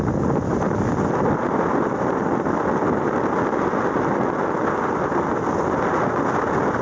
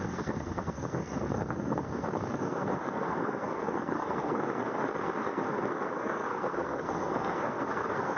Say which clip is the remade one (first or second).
second